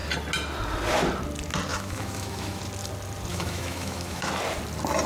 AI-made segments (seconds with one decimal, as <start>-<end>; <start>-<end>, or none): 1.7-2.6; 3.3-4.3